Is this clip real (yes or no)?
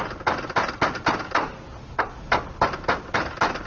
yes